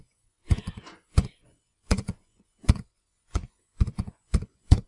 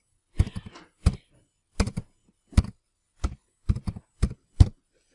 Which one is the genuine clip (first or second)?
second